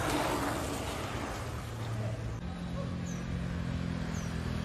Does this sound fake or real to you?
real